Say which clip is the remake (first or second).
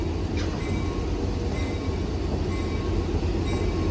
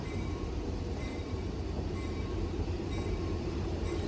second